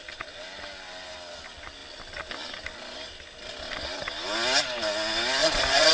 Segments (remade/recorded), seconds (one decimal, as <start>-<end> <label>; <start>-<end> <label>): 0.0-5.4 recorded; 5.4-5.9 remade

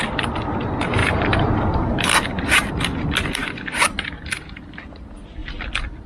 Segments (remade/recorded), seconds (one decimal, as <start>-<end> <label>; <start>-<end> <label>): 0.0-1.0 recorded; 1.0-2.7 remade; 2.7-3.4 recorded; 3.4-4.6 remade; 4.6-6.1 recorded

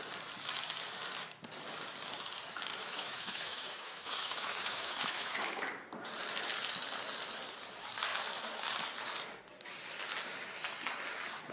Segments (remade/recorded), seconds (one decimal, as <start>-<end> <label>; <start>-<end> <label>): 0.0-2.8 recorded; 2.8-5.6 remade; 5.6-11.5 recorded

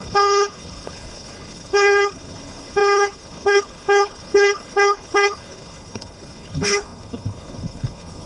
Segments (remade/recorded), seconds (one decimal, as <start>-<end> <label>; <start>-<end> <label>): 0.0-8.3 remade

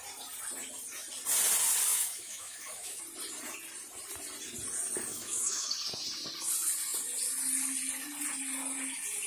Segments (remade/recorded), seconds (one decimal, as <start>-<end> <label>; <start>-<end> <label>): 0.0-1.9 recorded; 1.9-3.0 remade; 3.0-5.1 recorded; 5.1-5.7 remade; 5.7-9.3 recorded